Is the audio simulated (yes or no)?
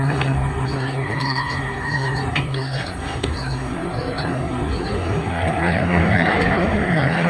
yes